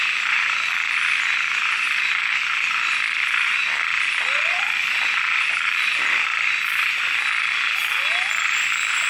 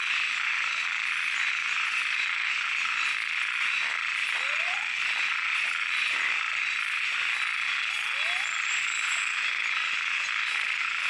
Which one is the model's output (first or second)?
first